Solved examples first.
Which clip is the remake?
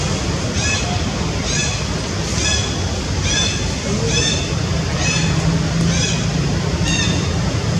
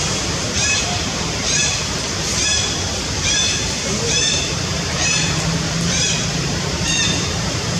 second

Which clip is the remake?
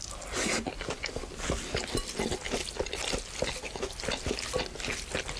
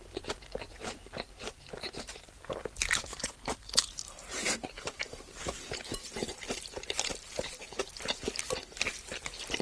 second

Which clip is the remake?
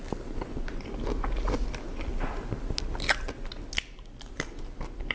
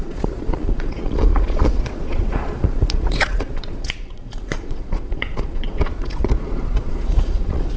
second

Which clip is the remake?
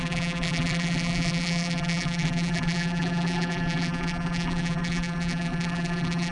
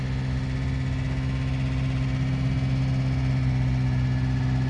first